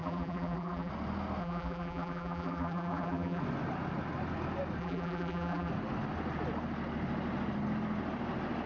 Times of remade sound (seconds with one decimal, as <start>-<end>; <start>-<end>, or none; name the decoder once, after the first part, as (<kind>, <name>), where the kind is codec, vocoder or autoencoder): 0.0-0.9 (vocoder, BigVGAN v2); 1.4-3.4; 4.8-5.7